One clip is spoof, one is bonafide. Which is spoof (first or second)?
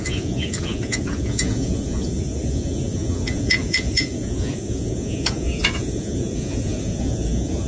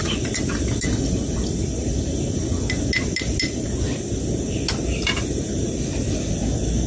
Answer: first